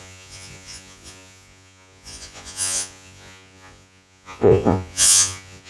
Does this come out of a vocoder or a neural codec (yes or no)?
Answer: yes